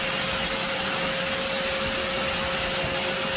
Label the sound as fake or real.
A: real